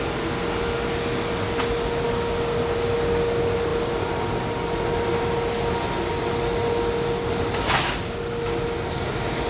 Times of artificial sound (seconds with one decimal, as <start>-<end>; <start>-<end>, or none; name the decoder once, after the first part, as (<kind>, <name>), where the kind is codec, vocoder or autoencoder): none

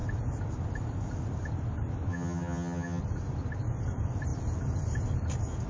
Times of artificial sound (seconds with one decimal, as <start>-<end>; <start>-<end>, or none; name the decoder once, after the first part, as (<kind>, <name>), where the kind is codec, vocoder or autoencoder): 2.1-3.0 (vocoder, HiFi-GAN)

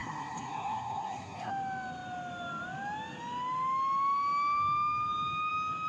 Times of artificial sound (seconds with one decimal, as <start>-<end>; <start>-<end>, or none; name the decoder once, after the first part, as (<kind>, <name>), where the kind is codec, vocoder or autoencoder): 0.0-1.5 (codec, SNAC)

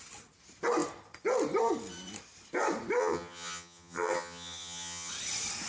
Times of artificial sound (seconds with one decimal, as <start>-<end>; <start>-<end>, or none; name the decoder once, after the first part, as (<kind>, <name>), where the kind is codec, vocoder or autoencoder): 3.0-5.1 (vocoder, HiFi-GAN)

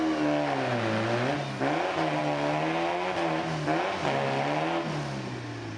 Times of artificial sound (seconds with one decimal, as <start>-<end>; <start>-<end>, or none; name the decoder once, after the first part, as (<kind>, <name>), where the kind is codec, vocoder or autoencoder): none

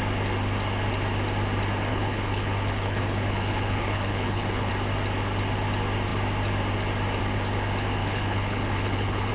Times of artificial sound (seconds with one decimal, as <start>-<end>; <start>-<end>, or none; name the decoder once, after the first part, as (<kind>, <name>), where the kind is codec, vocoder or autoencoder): 1.9-4.7 (codec, HILCodec); 8.0-9.3